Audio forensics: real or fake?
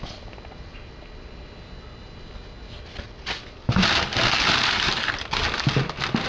real